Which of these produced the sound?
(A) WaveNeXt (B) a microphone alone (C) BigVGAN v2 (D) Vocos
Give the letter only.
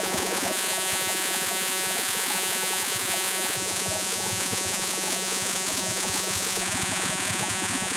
D